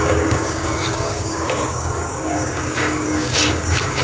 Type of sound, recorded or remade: remade